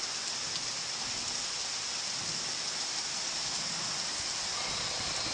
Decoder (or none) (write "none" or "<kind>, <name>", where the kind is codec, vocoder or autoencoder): none